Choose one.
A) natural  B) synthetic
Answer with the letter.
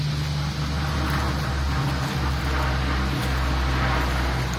A